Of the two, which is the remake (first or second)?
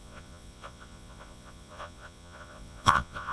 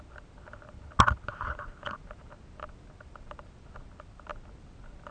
first